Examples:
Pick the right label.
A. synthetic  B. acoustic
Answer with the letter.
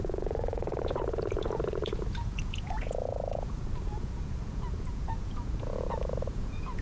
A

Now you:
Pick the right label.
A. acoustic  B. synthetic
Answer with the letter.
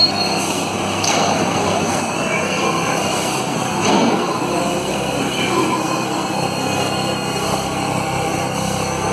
B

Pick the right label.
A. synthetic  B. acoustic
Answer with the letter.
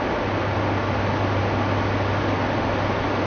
B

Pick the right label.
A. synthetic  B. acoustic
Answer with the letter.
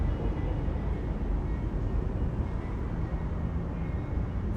B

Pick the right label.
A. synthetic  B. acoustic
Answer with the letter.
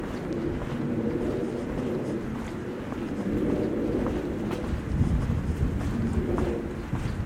B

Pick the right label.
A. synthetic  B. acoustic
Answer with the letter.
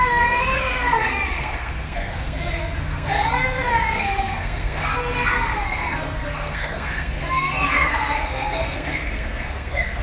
A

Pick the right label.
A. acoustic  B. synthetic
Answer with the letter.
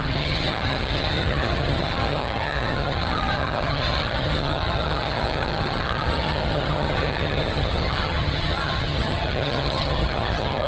B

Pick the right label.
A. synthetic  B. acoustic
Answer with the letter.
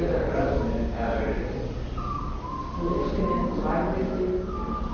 B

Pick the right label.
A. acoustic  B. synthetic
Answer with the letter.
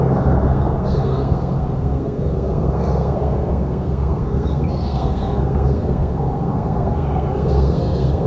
B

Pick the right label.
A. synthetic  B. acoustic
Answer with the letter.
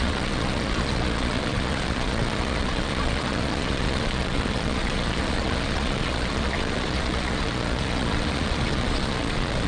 A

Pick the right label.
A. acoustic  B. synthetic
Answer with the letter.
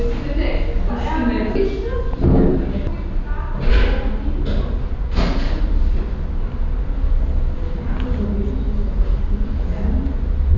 A